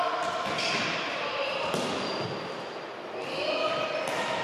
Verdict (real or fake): real